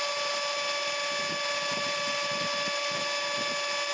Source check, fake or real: real